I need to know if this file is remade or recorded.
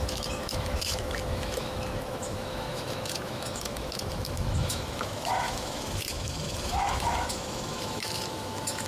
remade